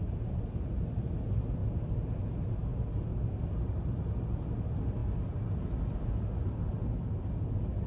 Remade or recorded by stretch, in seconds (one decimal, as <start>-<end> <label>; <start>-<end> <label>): 0.0-3.1 recorded; 3.1-3.7 remade; 3.7-7.9 recorded